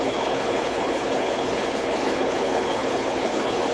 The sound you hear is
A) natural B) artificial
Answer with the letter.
B